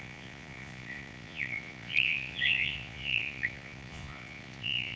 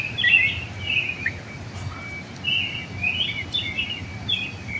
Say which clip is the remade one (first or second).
first